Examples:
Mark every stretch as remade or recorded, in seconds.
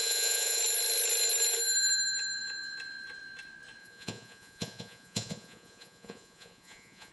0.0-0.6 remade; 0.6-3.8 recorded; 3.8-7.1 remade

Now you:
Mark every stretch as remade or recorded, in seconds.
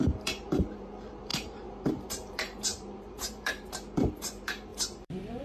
0.0-5.4 remade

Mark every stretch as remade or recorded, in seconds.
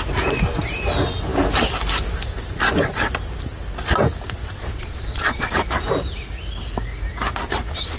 0.0-4.4 recorded; 4.4-5.5 remade; 5.5-8.0 recorded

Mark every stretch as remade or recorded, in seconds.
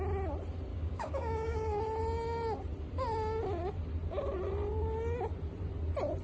0.0-0.7 recorded; 0.7-1.8 remade; 1.8-6.2 recorded